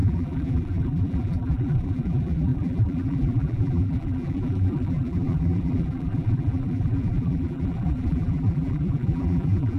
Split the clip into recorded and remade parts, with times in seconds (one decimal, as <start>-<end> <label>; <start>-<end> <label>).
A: 0.0-9.8 remade